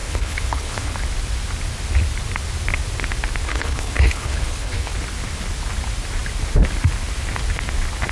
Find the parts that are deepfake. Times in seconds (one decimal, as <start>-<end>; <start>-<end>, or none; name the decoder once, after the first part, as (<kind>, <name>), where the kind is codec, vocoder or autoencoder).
0.0-0.9 (codec, HILCodec); 3.4-4.9